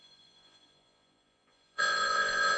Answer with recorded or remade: remade